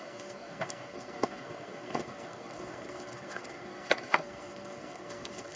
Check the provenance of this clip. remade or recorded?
remade